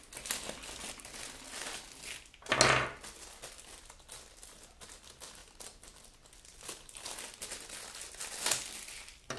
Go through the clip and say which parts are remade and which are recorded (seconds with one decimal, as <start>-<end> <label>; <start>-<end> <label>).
0.0-5.4 recorded; 5.4-7.2 remade; 7.2-9.4 recorded